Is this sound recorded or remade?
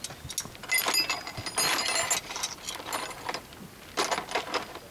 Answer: recorded